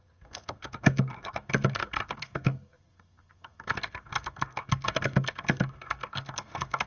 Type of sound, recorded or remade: remade